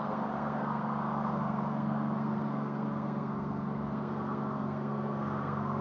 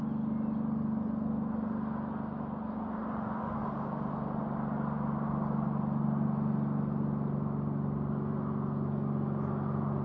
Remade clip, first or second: first